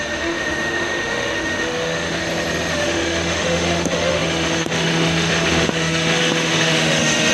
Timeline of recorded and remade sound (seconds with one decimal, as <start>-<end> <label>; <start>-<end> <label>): 0.0-2.2 remade; 2.2-2.7 recorded; 2.7-7.3 remade